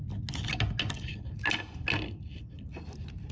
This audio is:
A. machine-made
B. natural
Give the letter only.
B